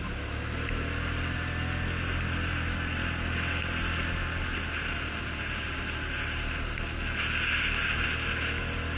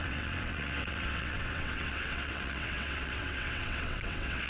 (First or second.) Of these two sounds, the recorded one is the first